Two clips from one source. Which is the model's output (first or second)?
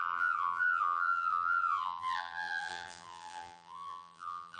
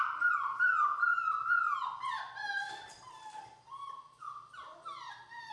first